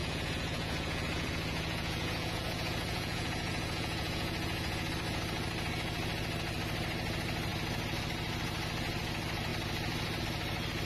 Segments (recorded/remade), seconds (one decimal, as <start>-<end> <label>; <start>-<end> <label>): 0.0-4.9 remade; 4.9-10.9 recorded